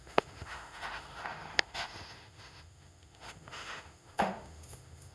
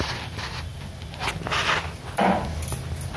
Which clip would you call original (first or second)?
second